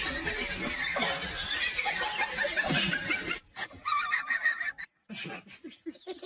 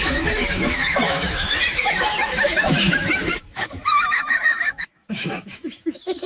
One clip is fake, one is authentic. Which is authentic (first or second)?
first